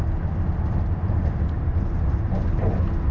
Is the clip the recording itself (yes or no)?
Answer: yes